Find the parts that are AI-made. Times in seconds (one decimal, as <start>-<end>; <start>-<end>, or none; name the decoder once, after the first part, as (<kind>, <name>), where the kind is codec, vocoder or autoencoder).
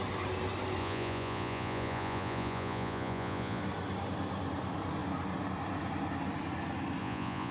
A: 0.8-3.6 (vocoder, Vocos); 7.0-7.5